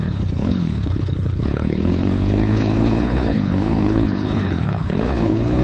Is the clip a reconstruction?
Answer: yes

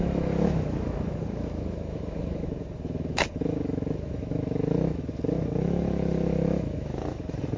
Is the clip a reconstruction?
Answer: yes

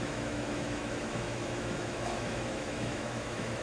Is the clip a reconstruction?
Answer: yes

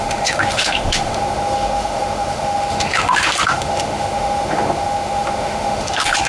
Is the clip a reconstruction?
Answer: yes